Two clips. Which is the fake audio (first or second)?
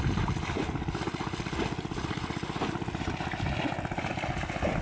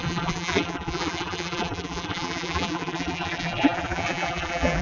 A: second